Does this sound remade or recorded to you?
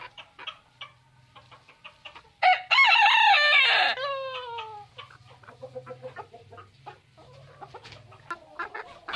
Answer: recorded